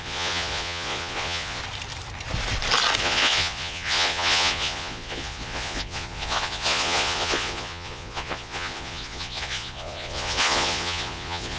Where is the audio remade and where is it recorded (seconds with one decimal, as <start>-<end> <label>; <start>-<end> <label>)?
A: 0.0-1.6 remade; 1.6-3.0 recorded; 3.0-11.6 remade